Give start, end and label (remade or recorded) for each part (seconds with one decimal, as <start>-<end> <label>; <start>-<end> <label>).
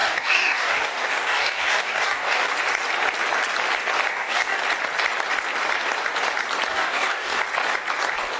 0.0-2.5 remade; 2.5-4.1 recorded; 4.1-4.6 remade; 4.6-6.7 recorded; 6.7-7.4 remade; 7.4-8.4 recorded